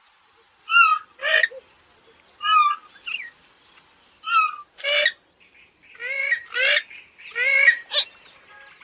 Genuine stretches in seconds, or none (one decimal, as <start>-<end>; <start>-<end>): 0.0-8.8